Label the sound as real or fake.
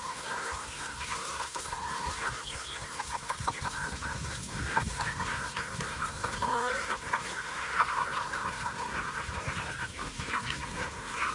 fake